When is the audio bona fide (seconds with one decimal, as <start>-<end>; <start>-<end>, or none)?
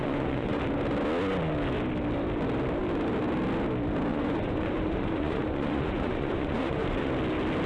0.6-4.1; 7.1-7.7